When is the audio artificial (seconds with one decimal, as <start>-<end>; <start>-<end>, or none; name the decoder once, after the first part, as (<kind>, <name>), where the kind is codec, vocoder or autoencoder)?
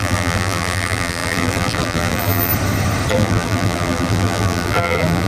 0.0-2.5 (vocoder, BigVGAN v2); 3.1-5.3